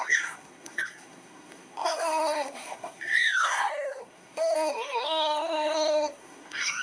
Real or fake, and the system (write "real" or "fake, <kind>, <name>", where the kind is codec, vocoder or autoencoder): fake, codec, SNAC